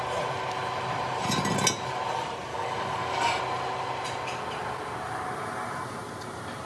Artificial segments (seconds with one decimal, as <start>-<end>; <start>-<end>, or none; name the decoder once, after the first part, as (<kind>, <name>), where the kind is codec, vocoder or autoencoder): 2.5-3.4 (codec, DAC)